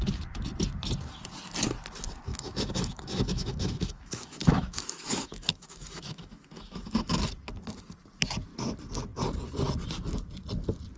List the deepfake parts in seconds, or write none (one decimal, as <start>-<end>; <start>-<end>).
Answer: 2.3-7.2